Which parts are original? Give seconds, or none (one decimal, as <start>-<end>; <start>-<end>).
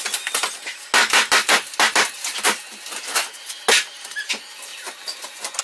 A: 0.0-5.6